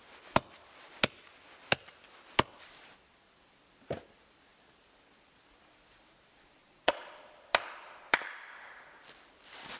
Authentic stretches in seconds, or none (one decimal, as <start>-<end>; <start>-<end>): 0.0-6.6; 7.2-9.8